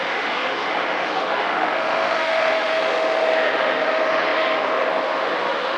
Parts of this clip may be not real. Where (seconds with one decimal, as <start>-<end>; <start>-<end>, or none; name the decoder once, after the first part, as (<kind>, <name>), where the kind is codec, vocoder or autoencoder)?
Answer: 0.0-5.8 (autoencoder, DAC-VAE)